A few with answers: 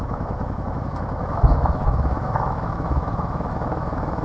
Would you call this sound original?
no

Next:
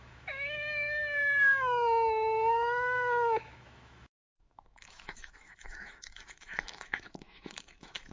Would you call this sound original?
no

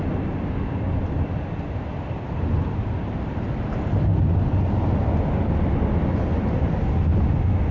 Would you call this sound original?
yes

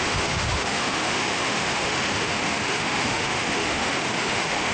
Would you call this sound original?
no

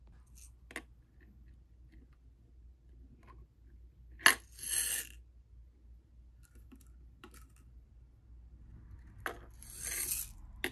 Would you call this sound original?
yes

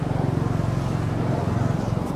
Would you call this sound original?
yes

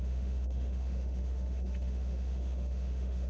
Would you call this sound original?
no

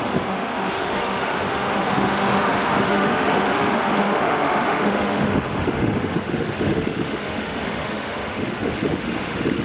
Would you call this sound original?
no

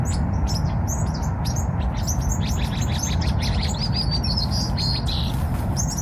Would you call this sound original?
yes